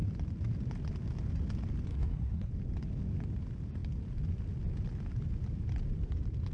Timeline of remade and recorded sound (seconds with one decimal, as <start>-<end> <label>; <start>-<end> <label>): 0.0-1.9 recorded; 1.9-2.5 remade; 2.5-6.5 recorded